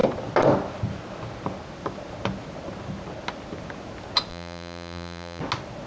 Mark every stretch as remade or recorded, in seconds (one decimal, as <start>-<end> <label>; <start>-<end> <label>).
0.0-4.3 recorded; 4.3-5.4 remade; 5.4-5.9 recorded